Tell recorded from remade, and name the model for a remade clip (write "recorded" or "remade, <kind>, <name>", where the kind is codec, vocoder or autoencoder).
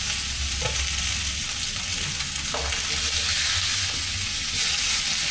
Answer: recorded